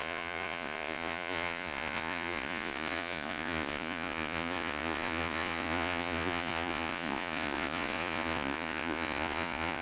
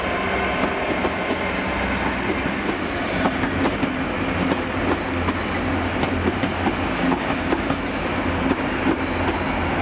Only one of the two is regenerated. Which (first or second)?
first